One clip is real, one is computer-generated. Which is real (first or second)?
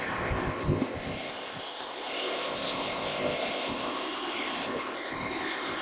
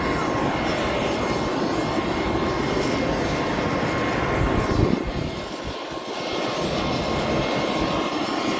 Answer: second